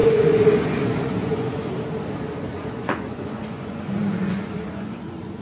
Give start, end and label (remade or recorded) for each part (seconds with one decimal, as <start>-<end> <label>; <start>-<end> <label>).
0.0-1.7 remade; 1.7-2.5 recorded; 2.5-5.4 remade